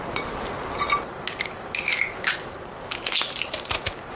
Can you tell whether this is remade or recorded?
recorded